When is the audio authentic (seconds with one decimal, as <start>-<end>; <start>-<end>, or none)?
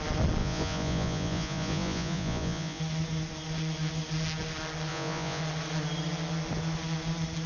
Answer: 0.0-0.4; 2.8-4.9; 5.4-7.5